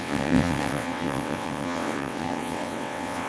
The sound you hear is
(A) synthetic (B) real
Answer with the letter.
A